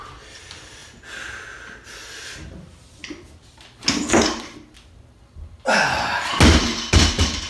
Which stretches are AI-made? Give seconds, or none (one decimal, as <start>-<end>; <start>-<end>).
none

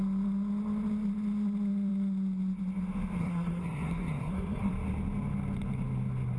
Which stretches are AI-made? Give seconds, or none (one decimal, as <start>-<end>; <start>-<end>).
3.2-4.7

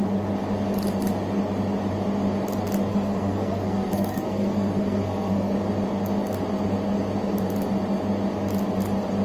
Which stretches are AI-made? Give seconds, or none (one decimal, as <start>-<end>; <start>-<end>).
2.9-5.5

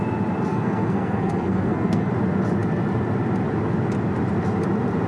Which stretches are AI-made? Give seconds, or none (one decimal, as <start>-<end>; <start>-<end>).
0.5-2.1

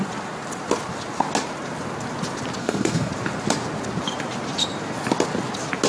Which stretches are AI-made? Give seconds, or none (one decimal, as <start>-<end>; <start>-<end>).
2.6-3.1

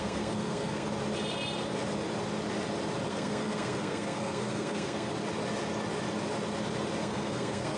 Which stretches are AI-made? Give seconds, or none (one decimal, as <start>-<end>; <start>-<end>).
0.0-0.9; 3.1-5.1; 7.0-7.8

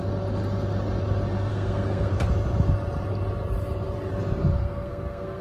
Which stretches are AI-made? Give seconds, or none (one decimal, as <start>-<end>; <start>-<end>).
1.5-2.1; 4.5-5.4